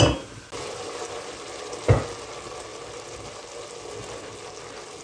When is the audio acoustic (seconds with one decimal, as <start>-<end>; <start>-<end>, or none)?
0.0-5.0